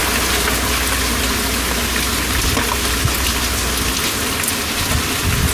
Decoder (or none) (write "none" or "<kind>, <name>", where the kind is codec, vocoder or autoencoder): none